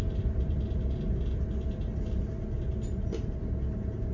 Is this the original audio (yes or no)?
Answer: yes